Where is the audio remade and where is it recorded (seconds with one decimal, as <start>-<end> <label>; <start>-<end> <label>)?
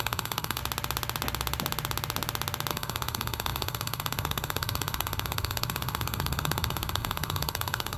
0.0-0.6 remade; 0.6-2.7 recorded; 2.7-8.0 remade